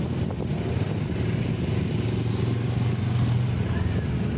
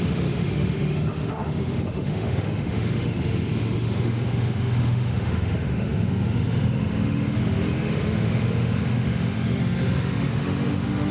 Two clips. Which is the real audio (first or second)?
first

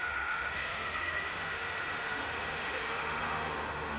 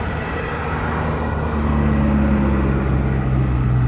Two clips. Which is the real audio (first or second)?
second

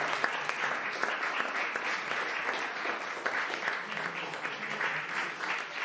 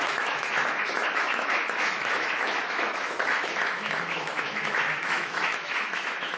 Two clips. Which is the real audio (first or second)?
first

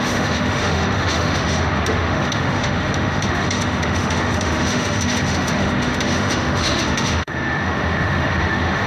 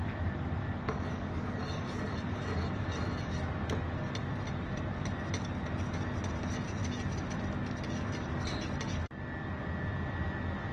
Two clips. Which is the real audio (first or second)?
second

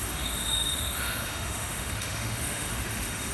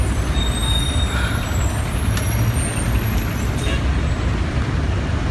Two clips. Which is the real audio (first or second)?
second